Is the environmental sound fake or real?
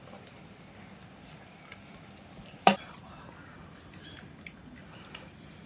real